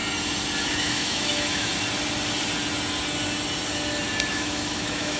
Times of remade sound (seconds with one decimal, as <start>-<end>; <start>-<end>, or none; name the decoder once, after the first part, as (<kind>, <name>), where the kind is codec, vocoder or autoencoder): 0.6-1.7 (autoencoder, DAC-VAE); 4.3-5.2